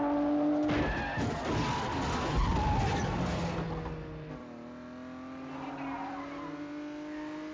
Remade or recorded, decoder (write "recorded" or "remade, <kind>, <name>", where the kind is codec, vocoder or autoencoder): recorded